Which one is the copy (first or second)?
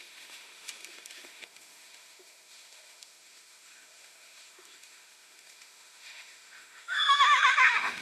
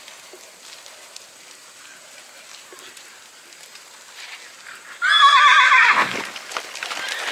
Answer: first